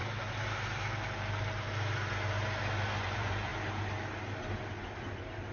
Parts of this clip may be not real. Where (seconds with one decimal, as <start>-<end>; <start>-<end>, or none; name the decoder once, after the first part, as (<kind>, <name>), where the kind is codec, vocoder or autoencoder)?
3.0-3.5 (vocoder, Vocos)